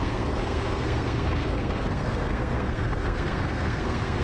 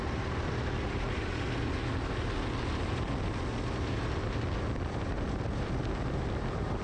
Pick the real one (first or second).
second